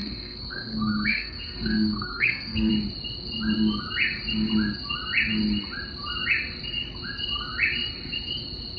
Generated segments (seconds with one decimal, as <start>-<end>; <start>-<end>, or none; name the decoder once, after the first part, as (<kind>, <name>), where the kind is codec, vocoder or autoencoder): 0.0-2.7 (codec, SNAC)